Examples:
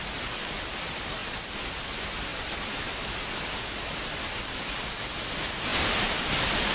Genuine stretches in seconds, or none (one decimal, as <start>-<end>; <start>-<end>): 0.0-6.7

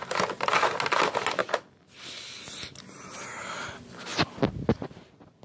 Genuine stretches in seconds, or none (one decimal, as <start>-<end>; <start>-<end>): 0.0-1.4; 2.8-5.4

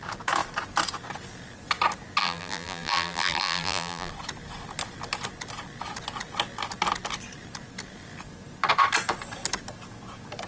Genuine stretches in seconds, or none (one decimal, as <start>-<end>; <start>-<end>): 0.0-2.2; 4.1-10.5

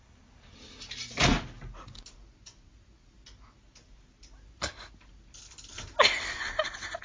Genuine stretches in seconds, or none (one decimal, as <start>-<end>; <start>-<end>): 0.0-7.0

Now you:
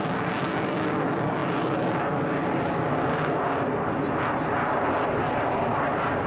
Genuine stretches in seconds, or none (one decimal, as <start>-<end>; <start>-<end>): 1.4-5.2

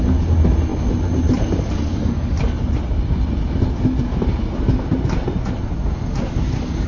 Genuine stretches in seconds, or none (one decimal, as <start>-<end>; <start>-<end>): 0.0-0.7; 1.7-6.9

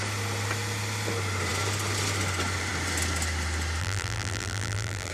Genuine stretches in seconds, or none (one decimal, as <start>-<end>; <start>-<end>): 0.0-3.8

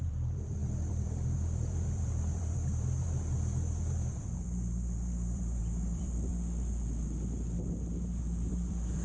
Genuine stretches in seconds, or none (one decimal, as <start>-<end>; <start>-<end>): 6.3-8.2